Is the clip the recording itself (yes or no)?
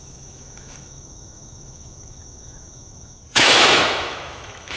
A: no